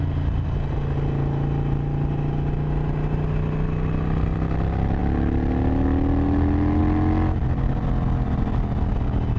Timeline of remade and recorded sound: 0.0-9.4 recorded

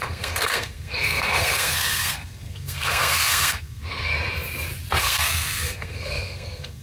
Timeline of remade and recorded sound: 0.0-4.1 remade; 4.1-5.0 recorded; 5.0-6.8 remade

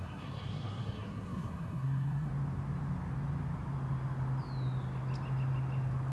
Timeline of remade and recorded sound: 0.0-2.3 remade; 2.3-6.1 recorded